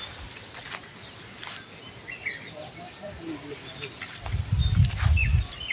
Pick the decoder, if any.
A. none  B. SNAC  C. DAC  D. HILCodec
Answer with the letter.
A